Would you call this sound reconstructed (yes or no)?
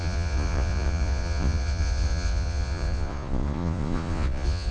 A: yes